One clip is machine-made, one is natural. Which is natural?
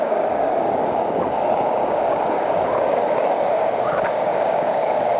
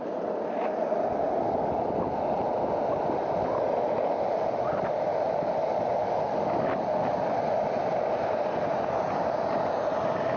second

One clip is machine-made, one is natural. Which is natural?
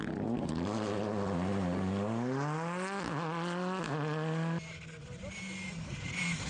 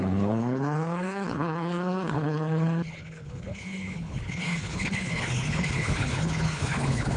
first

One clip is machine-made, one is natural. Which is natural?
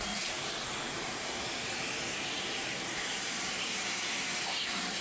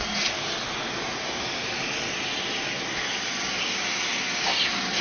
second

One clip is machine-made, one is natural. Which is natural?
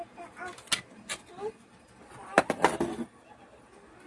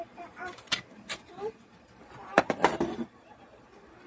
first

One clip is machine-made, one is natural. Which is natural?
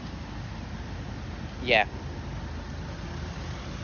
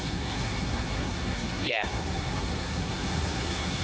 first